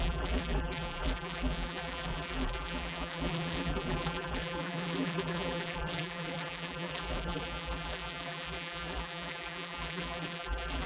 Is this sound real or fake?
fake